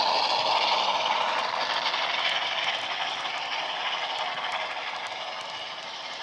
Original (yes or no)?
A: yes